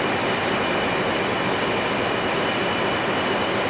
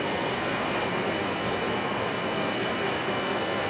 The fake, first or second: second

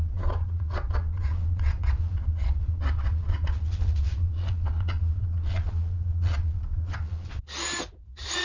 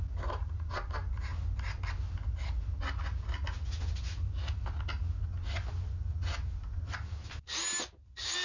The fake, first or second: first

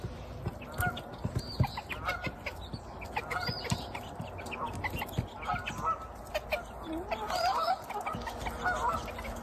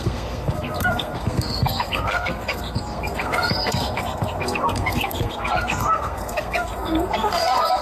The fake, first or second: second